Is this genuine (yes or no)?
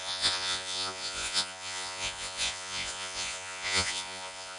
no